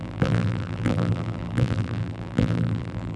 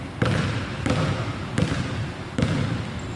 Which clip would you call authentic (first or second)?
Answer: second